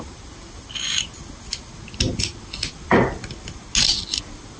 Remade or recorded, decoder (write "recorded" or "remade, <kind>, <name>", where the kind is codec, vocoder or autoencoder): recorded